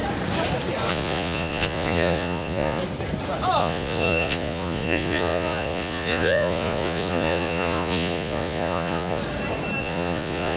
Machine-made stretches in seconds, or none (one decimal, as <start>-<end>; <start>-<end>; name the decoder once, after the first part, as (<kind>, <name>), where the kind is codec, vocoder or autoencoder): 0.9-2.8 (vocoder, Vocos); 3.6-9.2; 9.8-10.6